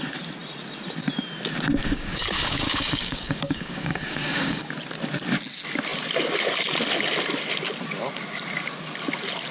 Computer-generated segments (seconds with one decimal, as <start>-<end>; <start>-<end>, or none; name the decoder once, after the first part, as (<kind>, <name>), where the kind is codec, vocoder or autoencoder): 1.8-4.7 (codec, DAC)